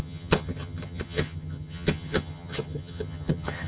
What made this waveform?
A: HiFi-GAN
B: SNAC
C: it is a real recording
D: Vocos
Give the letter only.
A